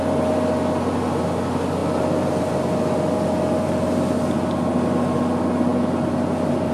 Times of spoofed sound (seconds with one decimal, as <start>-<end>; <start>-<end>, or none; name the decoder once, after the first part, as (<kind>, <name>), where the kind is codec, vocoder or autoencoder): none